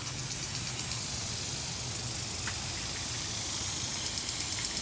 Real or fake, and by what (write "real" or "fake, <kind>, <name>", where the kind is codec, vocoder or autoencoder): real